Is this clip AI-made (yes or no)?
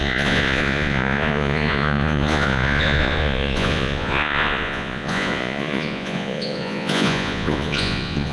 yes